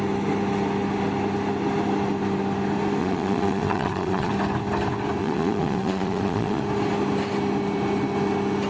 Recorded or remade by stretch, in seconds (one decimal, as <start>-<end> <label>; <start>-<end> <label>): 0.0-3.0 recorded; 3.0-4.3 remade; 4.3-5.2 recorded; 5.2-6.6 remade; 6.6-8.7 recorded